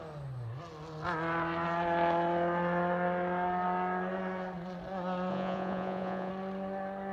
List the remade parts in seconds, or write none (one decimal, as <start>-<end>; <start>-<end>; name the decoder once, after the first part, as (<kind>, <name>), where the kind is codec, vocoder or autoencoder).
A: 5.3-6.3 (vocoder, Vocos)